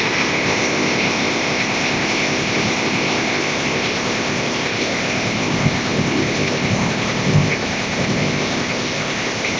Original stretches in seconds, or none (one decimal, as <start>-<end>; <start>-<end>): none

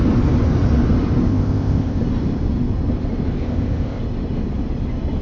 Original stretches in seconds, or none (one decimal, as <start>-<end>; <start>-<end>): 0.0-1.3; 2.0-3.4; 4.0-5.2

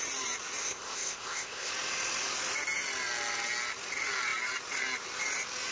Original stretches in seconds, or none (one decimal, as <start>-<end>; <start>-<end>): 0.0-0.6; 1.7-5.7